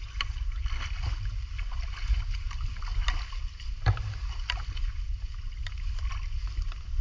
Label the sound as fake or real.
real